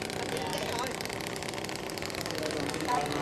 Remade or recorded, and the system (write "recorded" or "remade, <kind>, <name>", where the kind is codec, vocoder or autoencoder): recorded